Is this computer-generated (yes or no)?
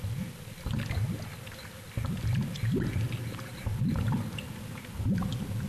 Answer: no